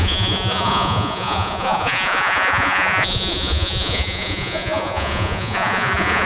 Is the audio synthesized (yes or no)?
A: yes